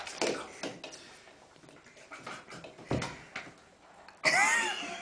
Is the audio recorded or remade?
recorded